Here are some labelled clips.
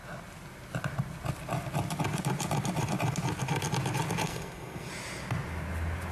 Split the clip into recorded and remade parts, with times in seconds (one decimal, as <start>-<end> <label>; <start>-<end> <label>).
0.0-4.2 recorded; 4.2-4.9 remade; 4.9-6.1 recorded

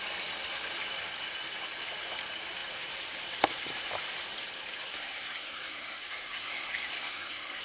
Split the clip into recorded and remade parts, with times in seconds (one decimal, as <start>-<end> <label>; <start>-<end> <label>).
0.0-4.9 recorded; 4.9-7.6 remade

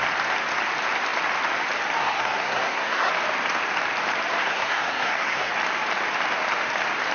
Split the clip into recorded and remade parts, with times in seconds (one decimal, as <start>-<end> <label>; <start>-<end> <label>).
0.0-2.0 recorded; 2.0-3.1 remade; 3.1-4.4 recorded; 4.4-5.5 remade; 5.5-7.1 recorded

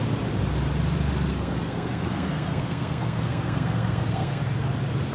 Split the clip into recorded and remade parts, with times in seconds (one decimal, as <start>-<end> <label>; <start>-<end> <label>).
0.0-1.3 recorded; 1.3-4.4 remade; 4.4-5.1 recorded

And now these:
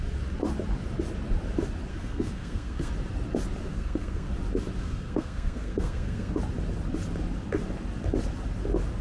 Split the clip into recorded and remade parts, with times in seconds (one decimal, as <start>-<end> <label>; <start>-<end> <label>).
0.0-1.9 recorded; 1.9-2.9 remade; 2.9-3.7 recorded; 3.7-4.3 remade; 4.3-4.8 recorded; 4.8-6.3 remade; 6.3-9.0 recorded

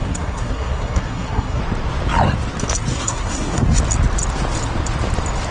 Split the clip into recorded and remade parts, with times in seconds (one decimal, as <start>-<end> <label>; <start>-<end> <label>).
0.0-1.6 remade; 1.6-2.9 recorded; 2.9-3.8 remade; 3.8-5.5 recorded

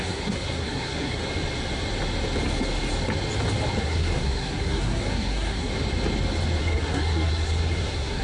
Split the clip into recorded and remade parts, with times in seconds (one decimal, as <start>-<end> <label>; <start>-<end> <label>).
0.0-1.2 remade; 1.2-3.8 recorded; 3.8-5.7 remade; 5.7-6.6 recorded; 6.6-8.2 remade

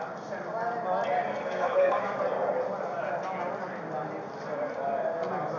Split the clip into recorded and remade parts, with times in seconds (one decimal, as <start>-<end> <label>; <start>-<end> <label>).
0.0-1.3 recorded; 1.3-2.0 remade; 2.0-5.6 recorded